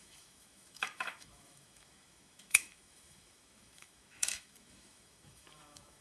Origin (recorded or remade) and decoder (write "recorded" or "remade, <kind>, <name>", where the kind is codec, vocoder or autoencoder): remade, autoencoder, DAC-VAE